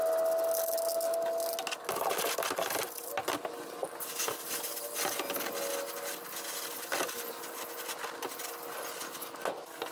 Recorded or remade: recorded